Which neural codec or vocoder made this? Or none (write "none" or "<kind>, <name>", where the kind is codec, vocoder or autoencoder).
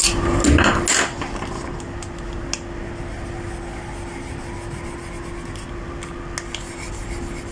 none